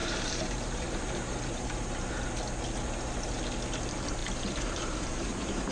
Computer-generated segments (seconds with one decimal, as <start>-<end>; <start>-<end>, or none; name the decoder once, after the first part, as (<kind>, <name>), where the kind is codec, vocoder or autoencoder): 0.0-2.1 (vocoder, BigVGAN v2); 4.2-5.7